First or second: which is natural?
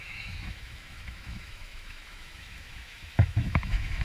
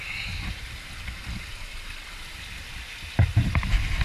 second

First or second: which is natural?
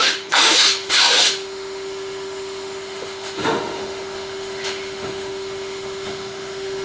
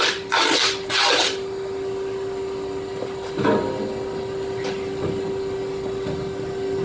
second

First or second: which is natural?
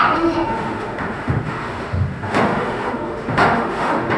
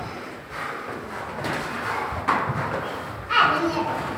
second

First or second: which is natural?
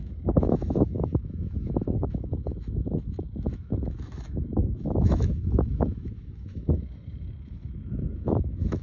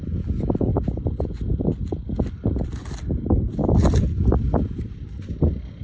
second